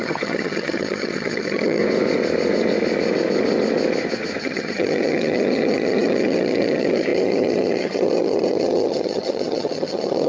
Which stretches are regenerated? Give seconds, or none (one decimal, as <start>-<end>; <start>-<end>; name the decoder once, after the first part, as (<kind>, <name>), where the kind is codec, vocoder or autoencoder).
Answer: 0.0-1.8 (vocoder, HiFi-GAN); 4.4-10.3